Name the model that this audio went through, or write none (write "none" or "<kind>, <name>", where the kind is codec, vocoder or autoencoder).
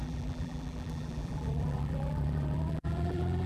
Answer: vocoder, BigVGAN v2